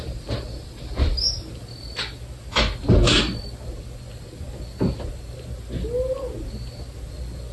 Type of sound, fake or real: real